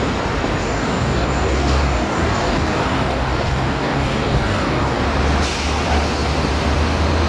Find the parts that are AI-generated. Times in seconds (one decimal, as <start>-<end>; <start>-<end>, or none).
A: 0.6-5.0